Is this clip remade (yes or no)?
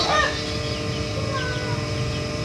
no